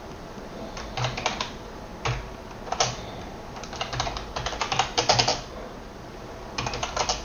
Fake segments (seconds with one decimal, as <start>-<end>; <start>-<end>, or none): 0.0-1.9; 3.5-7.2